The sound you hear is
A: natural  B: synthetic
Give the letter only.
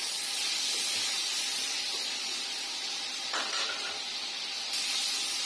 A